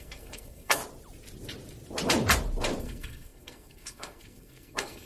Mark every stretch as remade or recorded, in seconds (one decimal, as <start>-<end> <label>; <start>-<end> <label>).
0.0-0.8 remade; 0.8-2.8 recorded; 2.8-5.1 remade